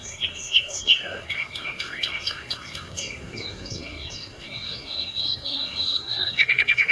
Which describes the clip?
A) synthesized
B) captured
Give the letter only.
A